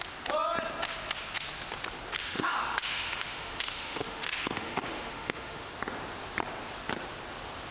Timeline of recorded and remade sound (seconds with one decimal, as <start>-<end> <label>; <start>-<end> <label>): 0.0-2.2 recorded; 2.2-5.7 remade; 5.7-7.7 recorded